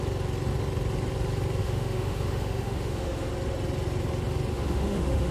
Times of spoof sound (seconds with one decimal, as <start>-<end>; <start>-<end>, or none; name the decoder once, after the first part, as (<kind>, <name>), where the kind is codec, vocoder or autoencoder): 1.6-3.3 (autoencoder, DAC-VAE); 4.5-5.3